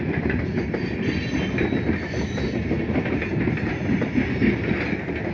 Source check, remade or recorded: recorded